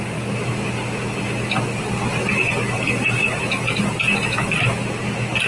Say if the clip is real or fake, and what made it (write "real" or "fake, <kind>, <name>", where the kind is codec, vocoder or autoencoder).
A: real